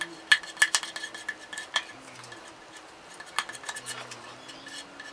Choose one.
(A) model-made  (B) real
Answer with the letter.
B